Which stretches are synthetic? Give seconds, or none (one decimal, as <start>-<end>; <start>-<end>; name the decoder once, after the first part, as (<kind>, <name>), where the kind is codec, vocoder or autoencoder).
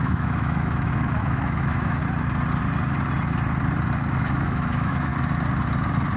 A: 0.0-2.0 (autoencoder, DAC-VAE); 4.2-5.1